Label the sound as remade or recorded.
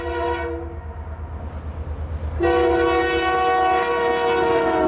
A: recorded